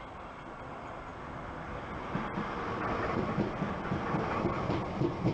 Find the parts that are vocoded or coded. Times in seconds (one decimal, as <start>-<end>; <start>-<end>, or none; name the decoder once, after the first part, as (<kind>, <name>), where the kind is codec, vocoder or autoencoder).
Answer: none